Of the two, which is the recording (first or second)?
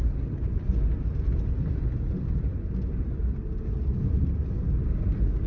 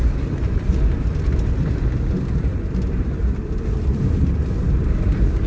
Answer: first